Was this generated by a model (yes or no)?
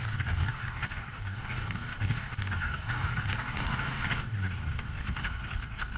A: yes